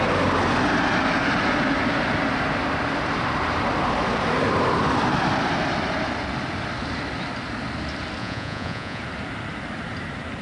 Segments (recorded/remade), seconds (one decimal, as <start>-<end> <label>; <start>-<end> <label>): 0.0-8.2 recorded; 8.2-9.0 remade; 9.0-10.4 recorded